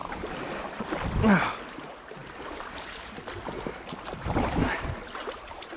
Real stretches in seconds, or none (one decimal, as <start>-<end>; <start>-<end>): 0.9-2.2